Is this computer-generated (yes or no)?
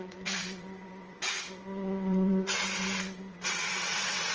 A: yes